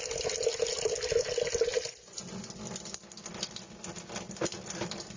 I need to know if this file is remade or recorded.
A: recorded